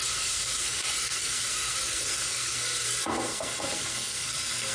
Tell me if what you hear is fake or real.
fake